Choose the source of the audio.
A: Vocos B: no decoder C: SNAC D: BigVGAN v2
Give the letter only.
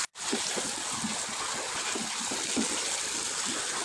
B